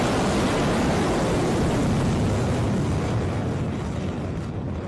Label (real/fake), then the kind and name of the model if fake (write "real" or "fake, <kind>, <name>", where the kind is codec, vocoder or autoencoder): real